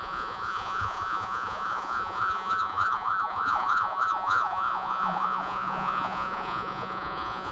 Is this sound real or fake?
fake